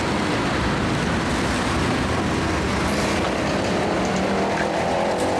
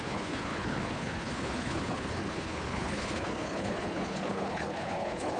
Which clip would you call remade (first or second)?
second